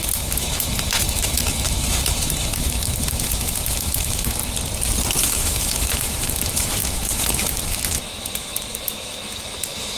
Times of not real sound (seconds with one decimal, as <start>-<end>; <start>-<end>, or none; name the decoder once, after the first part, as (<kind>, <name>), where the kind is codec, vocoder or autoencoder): 0.0-4.4 (autoencoder, DAC-VAE); 5.2-10.0